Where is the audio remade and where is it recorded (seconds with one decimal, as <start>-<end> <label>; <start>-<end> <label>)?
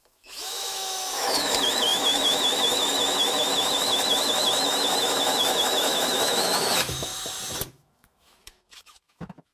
0.0-7.1 remade; 7.1-7.7 recorded; 7.7-9.5 remade